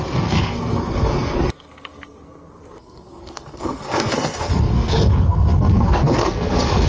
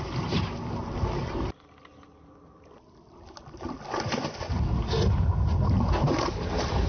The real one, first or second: second